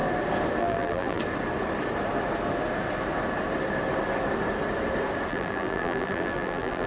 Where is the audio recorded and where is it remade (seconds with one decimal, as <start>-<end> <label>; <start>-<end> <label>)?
0.0-0.6 recorded; 0.6-1.2 remade; 1.2-5.3 recorded; 5.3-6.9 remade